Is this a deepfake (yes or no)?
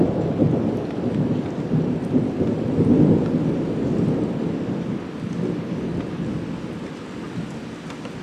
no